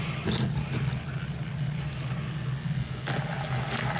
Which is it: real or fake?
real